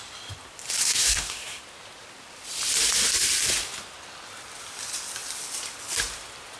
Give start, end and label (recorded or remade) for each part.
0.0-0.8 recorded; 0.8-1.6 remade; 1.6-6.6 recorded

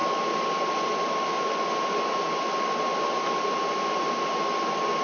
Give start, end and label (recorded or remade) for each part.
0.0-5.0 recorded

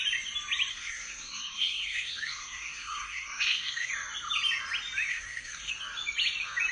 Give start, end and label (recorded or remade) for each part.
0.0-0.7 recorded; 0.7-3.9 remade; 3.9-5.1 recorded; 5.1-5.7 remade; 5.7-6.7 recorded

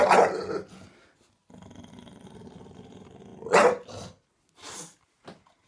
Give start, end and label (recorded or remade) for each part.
0.0-5.7 recorded

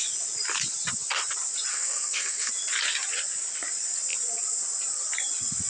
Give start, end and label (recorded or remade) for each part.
0.0-1.7 recorded; 1.7-2.5 remade; 2.5-5.7 recorded

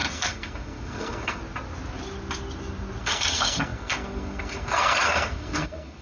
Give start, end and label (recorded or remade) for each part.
0.0-1.4 remade; 1.4-3.0 recorded; 3.0-6.0 remade

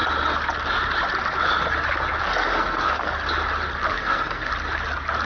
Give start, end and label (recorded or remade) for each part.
0.0-2.2 recorded; 2.2-3.1 remade; 3.1-3.9 recorded; 3.9-4.5 remade; 4.5-5.2 recorded

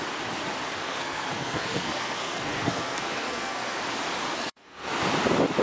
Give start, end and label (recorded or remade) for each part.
0.0-0.8 recorded; 0.8-3.8 remade; 3.8-4.3 recorded; 4.3-4.9 remade; 4.9-5.6 recorded